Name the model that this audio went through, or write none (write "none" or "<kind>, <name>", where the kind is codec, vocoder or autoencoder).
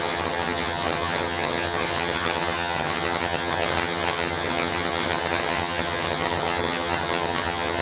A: vocoder, HiFi-GAN